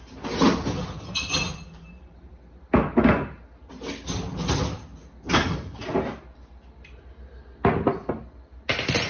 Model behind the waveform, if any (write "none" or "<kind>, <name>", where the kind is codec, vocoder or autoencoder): none